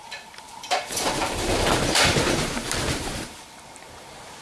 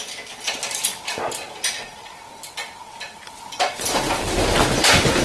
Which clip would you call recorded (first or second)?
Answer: second